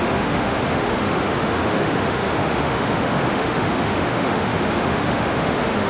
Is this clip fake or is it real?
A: fake